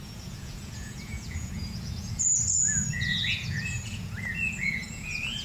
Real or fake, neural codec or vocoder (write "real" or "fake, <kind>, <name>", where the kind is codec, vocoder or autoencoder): fake, vocoder, Vocos